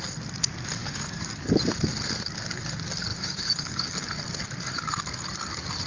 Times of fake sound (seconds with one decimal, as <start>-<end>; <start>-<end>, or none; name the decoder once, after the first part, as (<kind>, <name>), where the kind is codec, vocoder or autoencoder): 0.8-1.6 (codec, DAC); 3.1-3.9